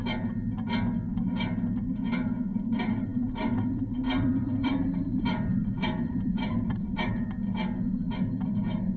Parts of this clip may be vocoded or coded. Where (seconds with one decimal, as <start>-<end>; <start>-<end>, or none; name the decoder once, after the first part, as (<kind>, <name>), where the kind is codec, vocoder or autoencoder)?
3.1-7.1 (vocoder, BigVGAN v2)